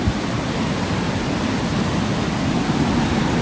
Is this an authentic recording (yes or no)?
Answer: yes